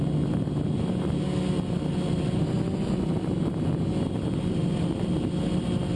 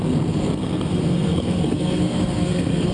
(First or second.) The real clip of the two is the first